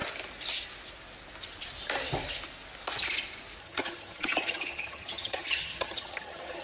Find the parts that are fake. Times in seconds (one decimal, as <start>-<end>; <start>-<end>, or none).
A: 3.6-6.6